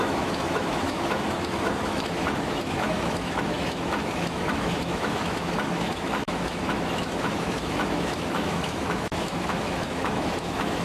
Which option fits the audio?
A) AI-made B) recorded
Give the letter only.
A